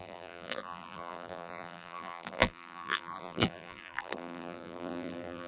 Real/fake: fake